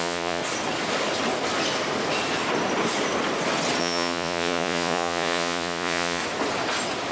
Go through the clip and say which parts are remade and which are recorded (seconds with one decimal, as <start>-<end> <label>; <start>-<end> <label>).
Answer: 0.0-0.4 remade; 0.4-3.8 recorded; 3.8-6.2 remade; 6.2-7.1 recorded